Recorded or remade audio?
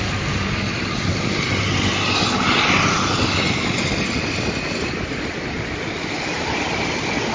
recorded